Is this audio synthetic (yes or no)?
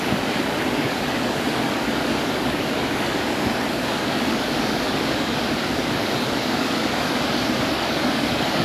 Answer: yes